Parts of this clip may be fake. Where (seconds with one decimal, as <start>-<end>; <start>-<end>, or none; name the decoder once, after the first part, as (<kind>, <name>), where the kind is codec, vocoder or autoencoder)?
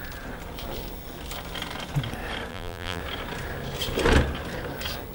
2.5-3.0 (vocoder, BigVGAN v2)